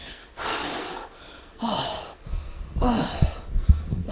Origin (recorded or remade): remade